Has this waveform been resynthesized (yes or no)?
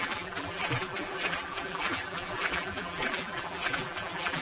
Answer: yes